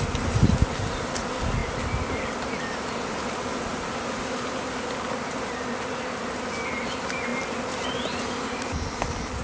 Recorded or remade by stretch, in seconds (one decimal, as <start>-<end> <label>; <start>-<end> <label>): 0.0-9.4 recorded